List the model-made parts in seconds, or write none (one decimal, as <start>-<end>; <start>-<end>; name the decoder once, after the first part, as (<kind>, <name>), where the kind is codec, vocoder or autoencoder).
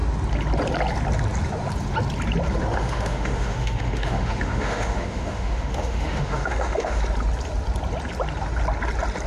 2.7-7.0 (autoencoder, DAC-VAE)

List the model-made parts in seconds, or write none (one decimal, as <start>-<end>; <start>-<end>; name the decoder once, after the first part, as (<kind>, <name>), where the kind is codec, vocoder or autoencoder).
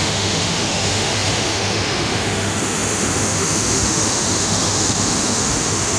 0.0-6.0 (autoencoder, DAC-VAE)